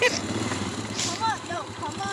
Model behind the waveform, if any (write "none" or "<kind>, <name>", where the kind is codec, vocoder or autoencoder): vocoder, BigVGAN v2